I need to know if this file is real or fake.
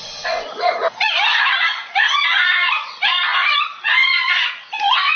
fake